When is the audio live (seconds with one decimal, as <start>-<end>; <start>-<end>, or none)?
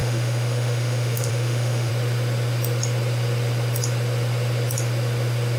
1.9-5.6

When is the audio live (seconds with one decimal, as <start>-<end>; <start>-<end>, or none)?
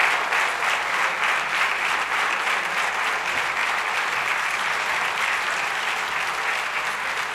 0.0-7.3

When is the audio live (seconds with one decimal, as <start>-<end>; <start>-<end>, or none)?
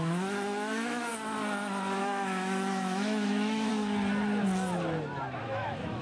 1.1-2.0; 3.7-5.4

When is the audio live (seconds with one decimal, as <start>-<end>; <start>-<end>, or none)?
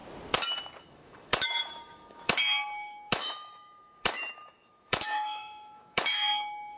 0.0-0.8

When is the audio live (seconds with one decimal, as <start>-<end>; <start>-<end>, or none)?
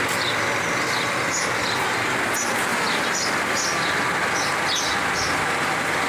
0.0-6.1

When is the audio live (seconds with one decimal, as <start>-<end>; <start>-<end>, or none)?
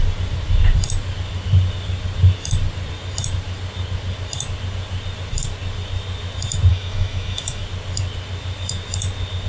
0.0-6.7; 7.6-9.5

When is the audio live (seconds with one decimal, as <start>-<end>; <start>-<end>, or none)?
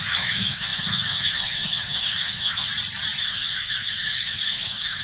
2.7-3.2